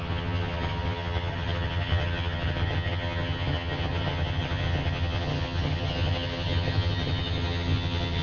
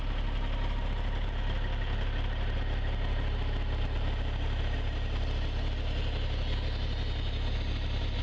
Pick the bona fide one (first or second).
second